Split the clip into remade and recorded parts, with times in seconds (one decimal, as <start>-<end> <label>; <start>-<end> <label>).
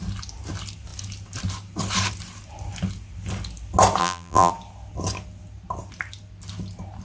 0.0-4.0 recorded; 4.0-4.5 remade; 4.5-7.0 recorded